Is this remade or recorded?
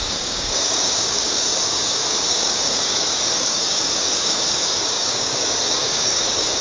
remade